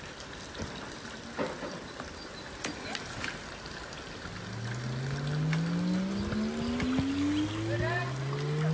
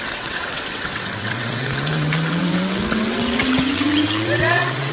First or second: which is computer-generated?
second